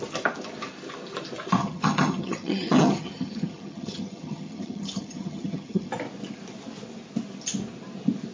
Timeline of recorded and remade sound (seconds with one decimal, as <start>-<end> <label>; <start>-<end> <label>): 0.0-1.6 recorded; 1.6-5.9 remade; 5.9-8.3 recorded